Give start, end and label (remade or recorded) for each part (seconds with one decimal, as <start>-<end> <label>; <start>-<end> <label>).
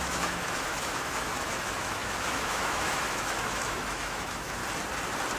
0.0-4.6 remade; 4.6-5.4 recorded